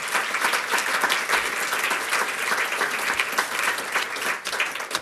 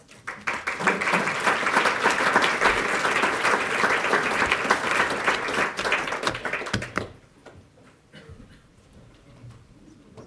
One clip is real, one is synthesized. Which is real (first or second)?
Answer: first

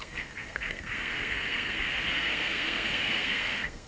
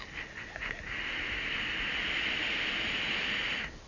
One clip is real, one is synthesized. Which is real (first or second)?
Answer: second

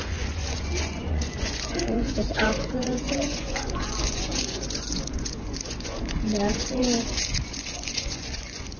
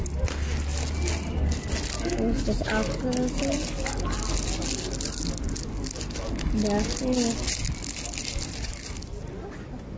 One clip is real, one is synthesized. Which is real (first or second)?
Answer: second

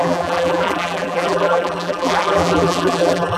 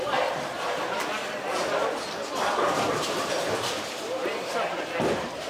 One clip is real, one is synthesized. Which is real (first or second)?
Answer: second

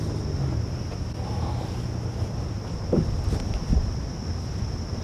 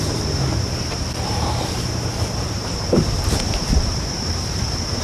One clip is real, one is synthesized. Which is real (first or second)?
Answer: first